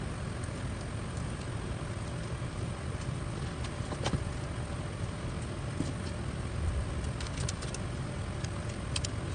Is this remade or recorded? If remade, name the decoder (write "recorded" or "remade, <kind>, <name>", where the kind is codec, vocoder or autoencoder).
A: recorded